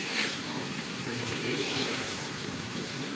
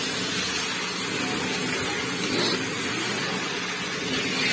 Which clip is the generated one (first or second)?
first